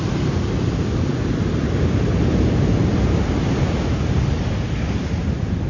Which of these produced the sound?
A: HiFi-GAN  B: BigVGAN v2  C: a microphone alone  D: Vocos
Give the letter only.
C